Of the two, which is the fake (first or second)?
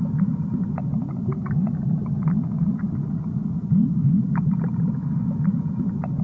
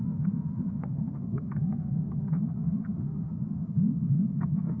second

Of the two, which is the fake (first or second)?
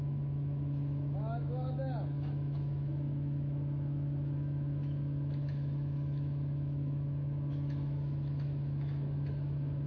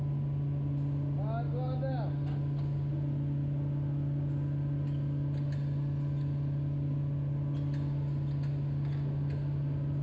first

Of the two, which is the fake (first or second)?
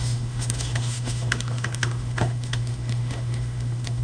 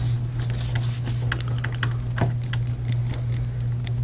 first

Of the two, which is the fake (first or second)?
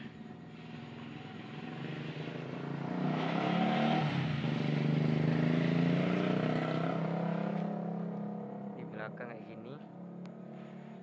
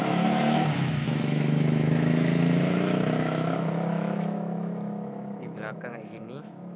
second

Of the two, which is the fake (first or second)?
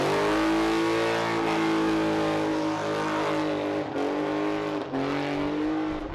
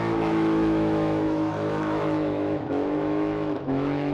second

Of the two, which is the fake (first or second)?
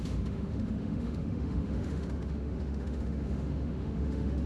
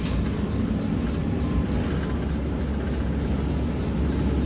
first